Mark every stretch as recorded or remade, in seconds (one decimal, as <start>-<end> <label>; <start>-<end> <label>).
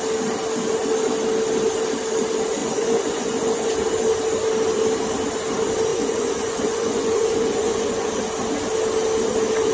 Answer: 0.0-2.6 recorded; 2.6-3.7 remade; 3.7-5.9 recorded; 5.9-8.1 remade; 8.1-9.7 recorded